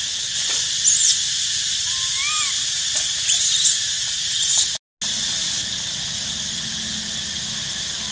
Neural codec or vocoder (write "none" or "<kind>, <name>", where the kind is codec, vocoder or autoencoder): none